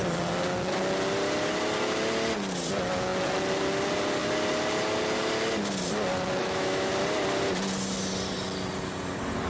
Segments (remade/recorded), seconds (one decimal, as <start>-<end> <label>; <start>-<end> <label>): 0.0-6.4 recorded; 6.4-6.9 remade; 6.9-9.5 recorded